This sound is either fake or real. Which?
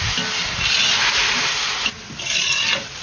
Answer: real